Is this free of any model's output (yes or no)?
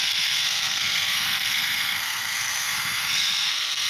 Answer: no